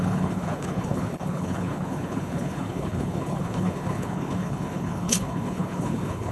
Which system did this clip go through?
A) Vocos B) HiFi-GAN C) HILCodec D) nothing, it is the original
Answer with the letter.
C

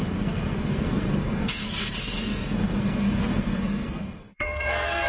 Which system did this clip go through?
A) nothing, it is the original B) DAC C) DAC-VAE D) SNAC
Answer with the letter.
D